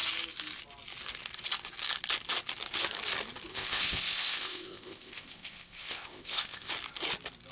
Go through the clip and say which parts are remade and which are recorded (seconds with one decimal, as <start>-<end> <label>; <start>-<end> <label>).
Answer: 0.0-3.5 recorded; 3.5-6.7 remade; 6.7-7.5 recorded